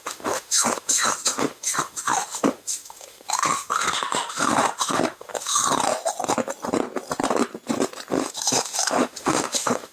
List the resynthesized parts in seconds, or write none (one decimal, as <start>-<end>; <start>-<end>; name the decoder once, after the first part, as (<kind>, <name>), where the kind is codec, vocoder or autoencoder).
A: 0.0-5.6 (autoencoder, DAC-VAE); 8.1-9.9